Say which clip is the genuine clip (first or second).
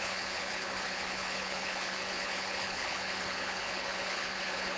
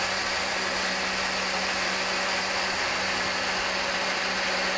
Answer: second